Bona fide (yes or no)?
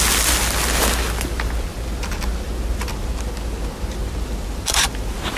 yes